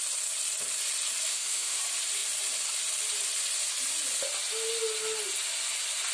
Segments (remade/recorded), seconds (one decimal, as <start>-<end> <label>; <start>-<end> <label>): 0.0-1.3 recorded; 1.3-1.8 remade; 1.8-6.1 recorded